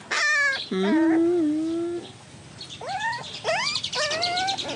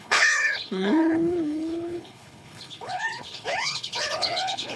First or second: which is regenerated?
second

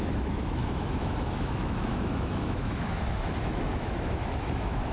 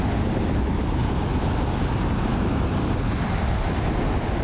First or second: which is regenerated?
first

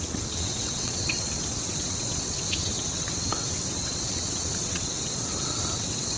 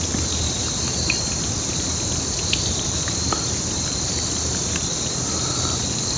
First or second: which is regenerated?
first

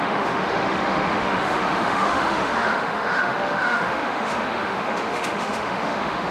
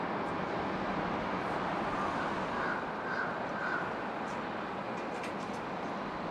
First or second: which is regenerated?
first